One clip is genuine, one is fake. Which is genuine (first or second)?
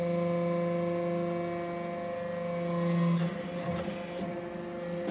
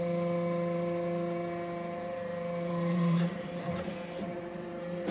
first